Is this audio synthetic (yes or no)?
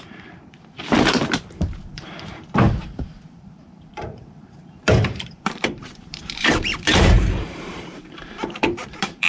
yes